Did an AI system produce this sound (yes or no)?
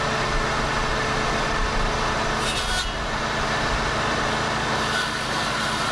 no